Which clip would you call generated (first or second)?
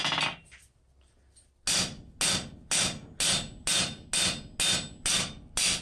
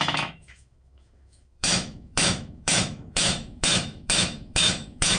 second